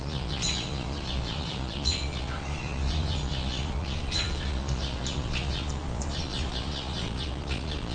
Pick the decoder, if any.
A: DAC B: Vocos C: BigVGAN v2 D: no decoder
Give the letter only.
B